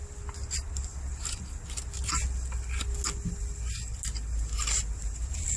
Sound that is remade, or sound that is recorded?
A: recorded